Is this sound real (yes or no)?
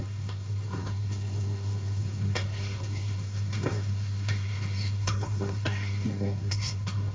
no